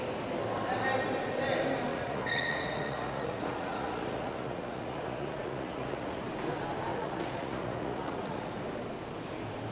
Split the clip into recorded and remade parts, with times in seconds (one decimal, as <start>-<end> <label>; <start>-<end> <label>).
0.0-1.9 recorded; 1.9-6.2 remade; 6.2-6.9 recorded; 6.9-8.5 remade; 8.5-9.7 recorded